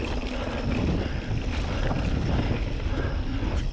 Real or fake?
real